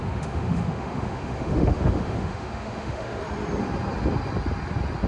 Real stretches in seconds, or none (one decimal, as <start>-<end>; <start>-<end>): 3.2-5.1